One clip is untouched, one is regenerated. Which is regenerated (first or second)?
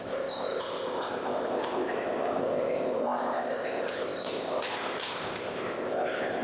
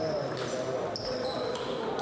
first